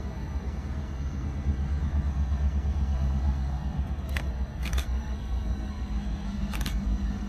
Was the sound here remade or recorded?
remade